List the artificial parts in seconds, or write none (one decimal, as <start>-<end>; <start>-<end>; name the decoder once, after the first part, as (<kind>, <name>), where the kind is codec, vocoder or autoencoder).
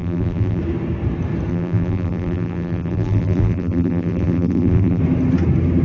0.0-0.6 (vocoder, BigVGAN v2); 1.5-5.0